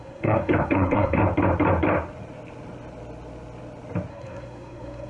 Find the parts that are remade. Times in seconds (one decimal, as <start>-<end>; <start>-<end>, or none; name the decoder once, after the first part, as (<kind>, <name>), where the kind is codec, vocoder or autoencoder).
0.0-1.2 (codec, SNAC); 4.1-5.1